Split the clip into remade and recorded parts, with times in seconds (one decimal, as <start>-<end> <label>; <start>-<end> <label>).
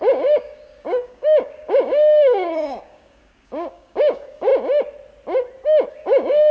0.0-4.5 remade; 4.5-5.9 recorded; 5.9-6.5 remade